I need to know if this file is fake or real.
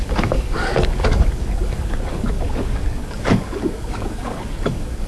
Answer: fake